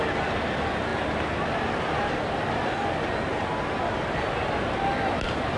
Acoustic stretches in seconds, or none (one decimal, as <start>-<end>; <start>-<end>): 0.0-5.6